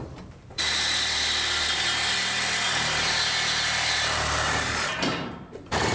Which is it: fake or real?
fake